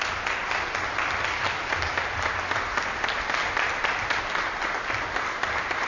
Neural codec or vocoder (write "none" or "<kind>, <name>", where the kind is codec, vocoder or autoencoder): none